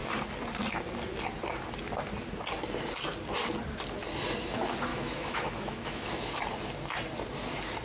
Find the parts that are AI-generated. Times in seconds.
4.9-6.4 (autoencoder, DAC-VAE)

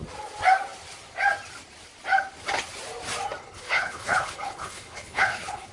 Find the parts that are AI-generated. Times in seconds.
3.4-5.7 (codec, HILCodec)

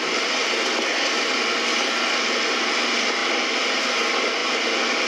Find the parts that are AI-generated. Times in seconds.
3.2-3.8 (vocoder, BigVGAN v2)

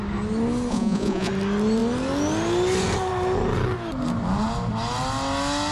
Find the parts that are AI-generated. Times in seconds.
0.7-1.3 (vocoder, Vocos)

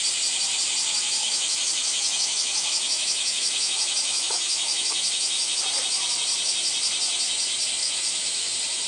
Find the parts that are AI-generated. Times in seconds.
1.2-5.6 (autoencoder, DAC-VAE); 7.8-8.5